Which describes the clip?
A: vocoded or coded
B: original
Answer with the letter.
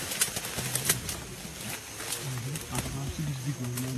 B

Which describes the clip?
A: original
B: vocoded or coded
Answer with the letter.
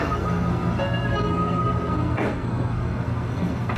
B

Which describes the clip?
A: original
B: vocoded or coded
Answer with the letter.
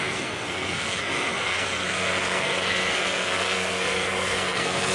B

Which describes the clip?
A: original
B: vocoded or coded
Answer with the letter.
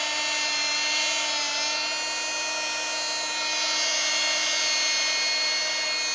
A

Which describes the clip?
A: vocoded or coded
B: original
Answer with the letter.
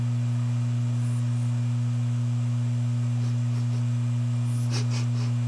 B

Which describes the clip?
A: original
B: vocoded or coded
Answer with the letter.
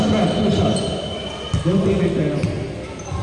A